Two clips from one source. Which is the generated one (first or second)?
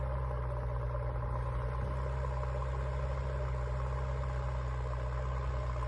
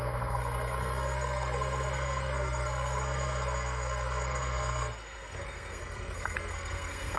second